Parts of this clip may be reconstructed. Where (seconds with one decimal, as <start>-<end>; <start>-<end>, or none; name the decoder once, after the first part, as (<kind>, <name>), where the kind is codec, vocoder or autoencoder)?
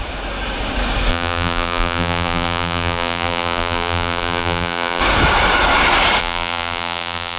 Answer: 1.1-5.0 (vocoder, BigVGAN v2); 6.2-7.4